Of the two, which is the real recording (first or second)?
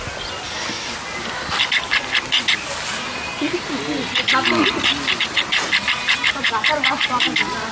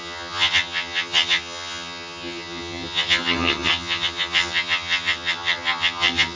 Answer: first